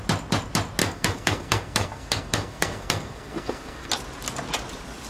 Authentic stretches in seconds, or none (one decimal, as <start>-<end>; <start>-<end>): 0.0-0.8; 3.9-5.1